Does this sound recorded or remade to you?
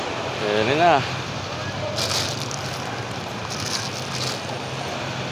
recorded